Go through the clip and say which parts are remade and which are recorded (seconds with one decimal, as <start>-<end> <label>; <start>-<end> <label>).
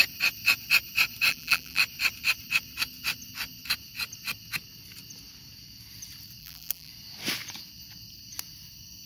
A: 0.0-1.3 recorded; 1.3-1.8 remade; 1.8-6.4 recorded; 6.4-6.9 remade; 6.9-9.1 recorded